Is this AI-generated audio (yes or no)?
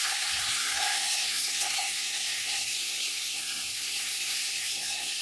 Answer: yes